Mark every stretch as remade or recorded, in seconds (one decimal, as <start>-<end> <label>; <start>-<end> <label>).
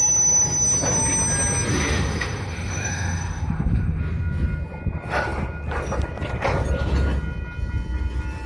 0.0-1.7 recorded; 1.7-4.0 remade; 4.0-8.5 recorded